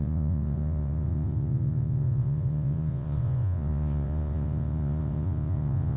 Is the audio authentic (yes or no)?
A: no